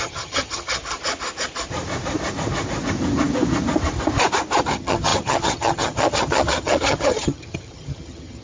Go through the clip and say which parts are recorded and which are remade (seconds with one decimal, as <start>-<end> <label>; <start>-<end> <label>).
0.0-0.8 remade; 0.8-4.6 recorded; 4.6-8.4 remade